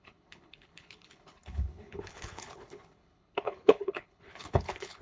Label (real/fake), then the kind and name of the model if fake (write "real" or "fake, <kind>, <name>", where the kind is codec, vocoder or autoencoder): fake, codec, HILCodec